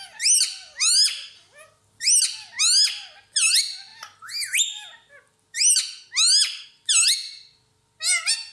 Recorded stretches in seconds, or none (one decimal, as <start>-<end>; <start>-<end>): 0.0-8.5

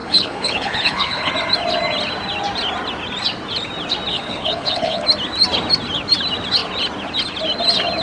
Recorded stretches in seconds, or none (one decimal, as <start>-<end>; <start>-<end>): 1.3-4.1; 5.0-8.0

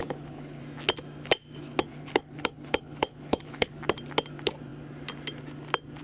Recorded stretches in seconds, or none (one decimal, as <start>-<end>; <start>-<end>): 0.6-1.9; 3.8-6.0

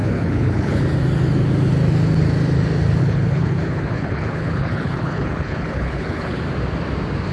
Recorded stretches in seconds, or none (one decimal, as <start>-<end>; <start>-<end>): 0.8-3.0; 6.4-7.3

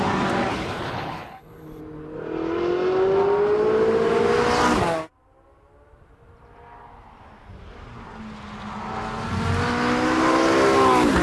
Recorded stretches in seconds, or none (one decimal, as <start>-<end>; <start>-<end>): 0.0-0.5; 1.8-11.2